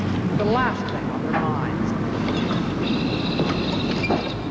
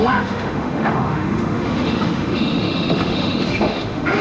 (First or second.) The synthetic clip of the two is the second